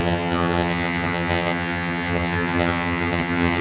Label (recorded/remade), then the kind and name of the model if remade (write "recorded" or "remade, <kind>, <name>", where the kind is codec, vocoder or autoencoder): remade, vocoder, HiFi-GAN